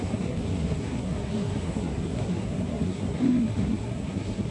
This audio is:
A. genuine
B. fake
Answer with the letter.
B